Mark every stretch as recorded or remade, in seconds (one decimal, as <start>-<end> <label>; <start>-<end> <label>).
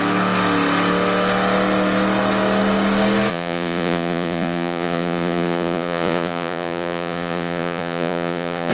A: 0.0-3.3 recorded; 3.3-8.7 remade